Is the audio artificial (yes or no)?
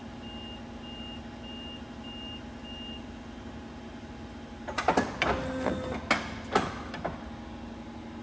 no